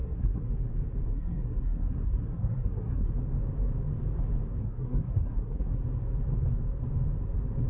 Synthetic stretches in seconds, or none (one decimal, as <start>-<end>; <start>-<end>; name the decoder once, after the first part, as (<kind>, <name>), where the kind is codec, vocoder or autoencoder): 0.0-0.5 (codec, SNAC); 1.1-3.1; 4.6-5.8